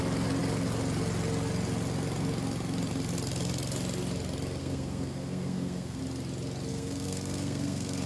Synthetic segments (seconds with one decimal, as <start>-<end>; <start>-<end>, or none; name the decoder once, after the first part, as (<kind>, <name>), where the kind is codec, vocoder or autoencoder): 4.6-6.0 (codec, SNAC); 6.7-8.1